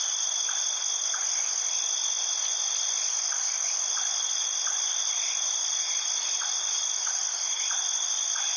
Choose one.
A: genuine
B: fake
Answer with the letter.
A